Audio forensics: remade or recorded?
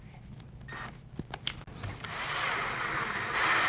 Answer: recorded